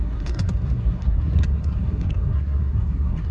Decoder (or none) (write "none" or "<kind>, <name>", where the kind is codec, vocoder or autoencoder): codec, SNAC